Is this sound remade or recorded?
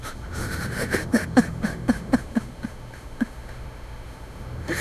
remade